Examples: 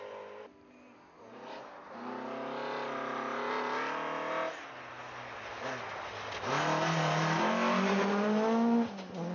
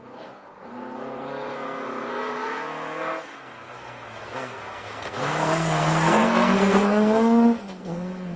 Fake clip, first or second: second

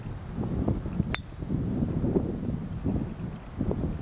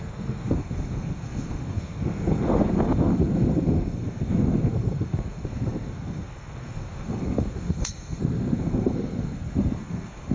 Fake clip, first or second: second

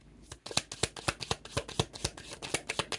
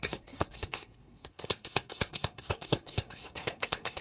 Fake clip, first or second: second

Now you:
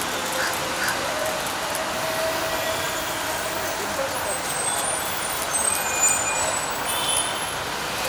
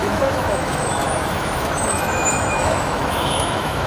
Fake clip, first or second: second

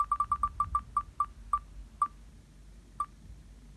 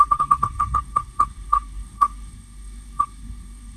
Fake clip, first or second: second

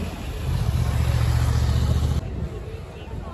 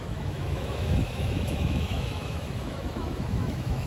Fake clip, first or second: second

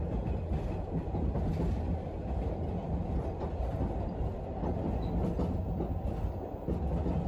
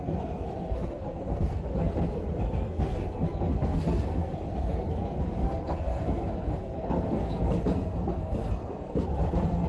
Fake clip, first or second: second